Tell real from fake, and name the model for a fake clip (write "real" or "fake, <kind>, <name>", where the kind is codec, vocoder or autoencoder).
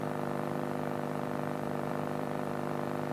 fake, vocoder, BigVGAN v2